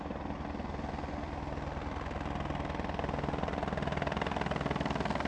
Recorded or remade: recorded